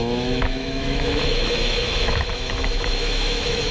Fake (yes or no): yes